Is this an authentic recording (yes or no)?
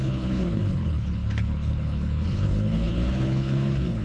no